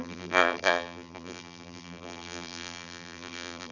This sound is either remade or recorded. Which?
remade